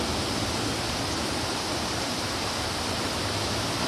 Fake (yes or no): yes